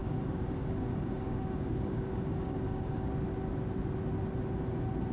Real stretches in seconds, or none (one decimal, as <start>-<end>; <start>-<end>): 3.1-5.1